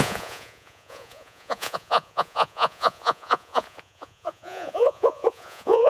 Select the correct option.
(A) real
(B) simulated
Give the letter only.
B